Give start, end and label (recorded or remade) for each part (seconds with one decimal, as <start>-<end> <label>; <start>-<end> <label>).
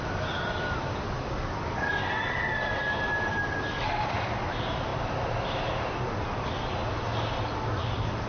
0.0-8.3 recorded